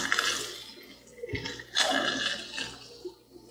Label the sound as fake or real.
real